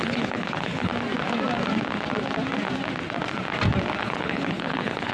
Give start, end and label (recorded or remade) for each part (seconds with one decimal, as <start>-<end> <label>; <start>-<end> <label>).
0.0-0.9 remade; 0.9-4.0 recorded; 4.0-5.1 remade